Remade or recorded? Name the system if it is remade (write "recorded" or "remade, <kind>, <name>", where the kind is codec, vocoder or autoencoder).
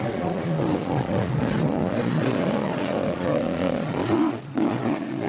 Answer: remade, vocoder, Vocos